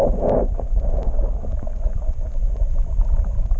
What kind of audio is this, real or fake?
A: real